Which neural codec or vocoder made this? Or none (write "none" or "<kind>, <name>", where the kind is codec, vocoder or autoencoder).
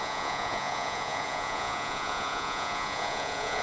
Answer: vocoder, Vocos